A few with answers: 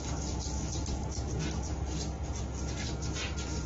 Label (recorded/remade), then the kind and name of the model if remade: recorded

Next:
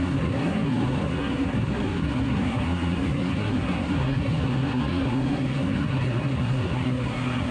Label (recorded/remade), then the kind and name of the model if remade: remade, codec, SNAC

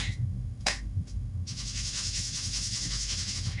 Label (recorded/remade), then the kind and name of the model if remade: remade, autoencoder, DAC-VAE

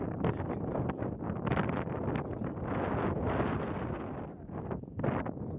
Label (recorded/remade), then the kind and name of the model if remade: recorded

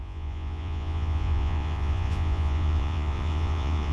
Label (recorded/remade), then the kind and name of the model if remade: remade, vocoder, Vocos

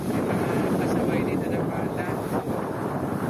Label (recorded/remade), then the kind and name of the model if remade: remade, vocoder, BigVGAN v2